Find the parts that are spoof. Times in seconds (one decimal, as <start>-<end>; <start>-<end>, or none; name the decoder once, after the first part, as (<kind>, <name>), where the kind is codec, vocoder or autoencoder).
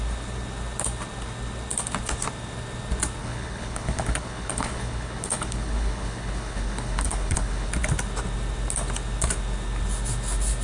3.2-7.7 (codec, HILCodec)